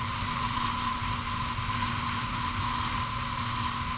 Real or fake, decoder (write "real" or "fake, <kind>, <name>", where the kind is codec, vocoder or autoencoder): real